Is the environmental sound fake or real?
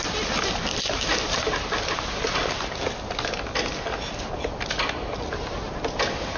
real